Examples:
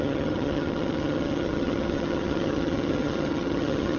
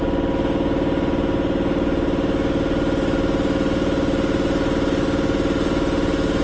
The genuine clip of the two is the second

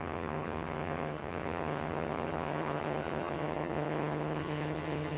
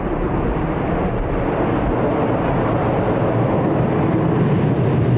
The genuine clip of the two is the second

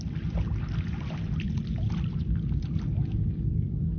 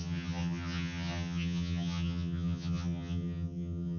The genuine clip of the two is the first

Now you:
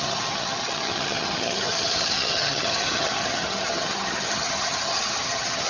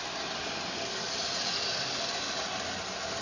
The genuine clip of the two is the second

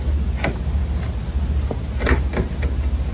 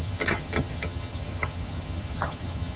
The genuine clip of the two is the first